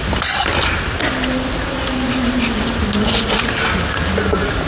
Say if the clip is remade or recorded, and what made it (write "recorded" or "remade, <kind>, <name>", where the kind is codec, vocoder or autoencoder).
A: recorded